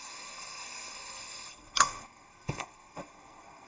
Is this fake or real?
fake